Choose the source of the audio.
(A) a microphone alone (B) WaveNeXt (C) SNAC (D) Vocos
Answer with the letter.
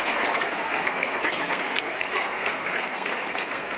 C